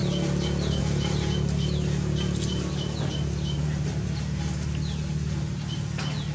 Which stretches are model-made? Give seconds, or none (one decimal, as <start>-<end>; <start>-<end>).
none